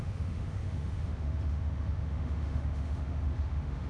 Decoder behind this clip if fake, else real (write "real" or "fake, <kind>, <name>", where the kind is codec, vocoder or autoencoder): fake, autoencoder, DAC-VAE